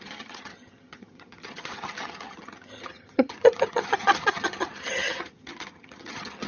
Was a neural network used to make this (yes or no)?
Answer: yes